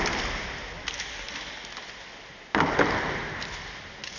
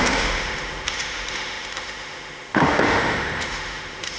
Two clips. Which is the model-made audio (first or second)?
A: second